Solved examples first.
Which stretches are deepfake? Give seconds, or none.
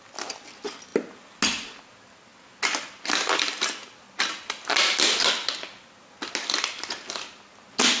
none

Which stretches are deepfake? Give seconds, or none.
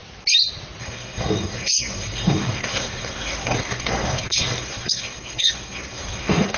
0.8-6.6 (codec, SNAC)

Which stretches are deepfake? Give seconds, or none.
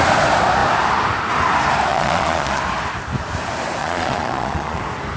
1.9-2.6 (vocoder, Vocos); 3.8-4.8